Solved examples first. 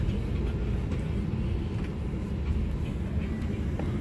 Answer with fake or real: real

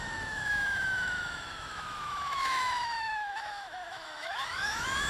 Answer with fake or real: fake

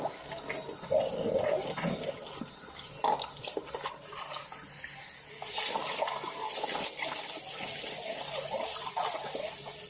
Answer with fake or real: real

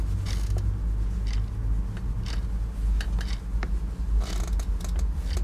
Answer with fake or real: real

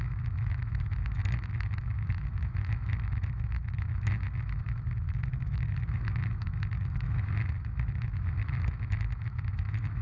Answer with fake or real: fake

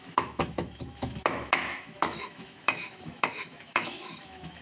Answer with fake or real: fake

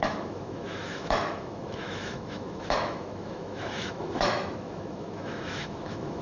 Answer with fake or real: fake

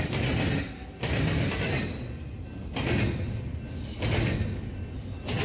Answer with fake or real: real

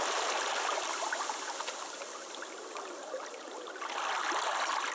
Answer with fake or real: real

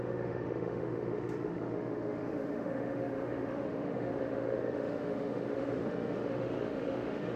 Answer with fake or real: fake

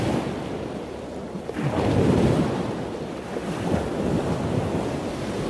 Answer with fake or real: real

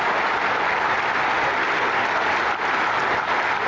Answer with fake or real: real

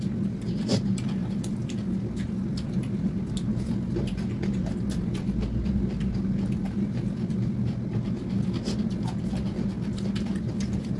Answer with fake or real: real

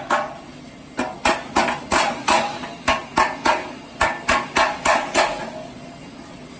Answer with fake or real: real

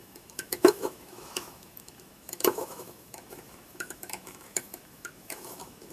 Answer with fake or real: fake